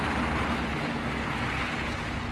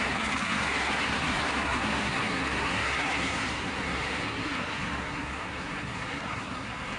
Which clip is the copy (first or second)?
second